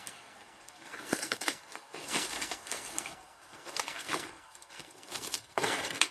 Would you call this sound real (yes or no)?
no